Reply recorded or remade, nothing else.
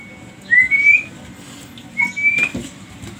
recorded